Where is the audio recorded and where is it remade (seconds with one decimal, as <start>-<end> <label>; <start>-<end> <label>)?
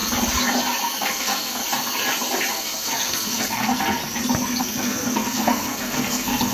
0.0-1.1 recorded; 1.1-1.6 remade; 1.6-2.5 recorded; 2.5-4.0 remade; 4.0-4.6 recorded; 4.6-6.5 remade